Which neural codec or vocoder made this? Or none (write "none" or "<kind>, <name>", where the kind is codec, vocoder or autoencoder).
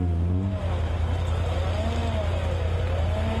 none